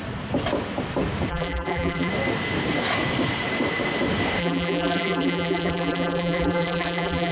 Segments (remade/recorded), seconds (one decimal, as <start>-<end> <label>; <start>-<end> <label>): 0.0-1.3 recorded; 1.3-2.1 remade; 2.1-4.4 recorded; 4.4-7.3 remade